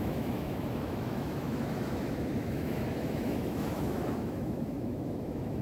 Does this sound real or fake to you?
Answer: fake